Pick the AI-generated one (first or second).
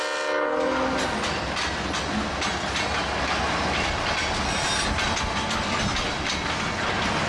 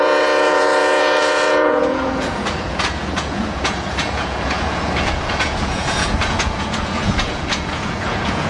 second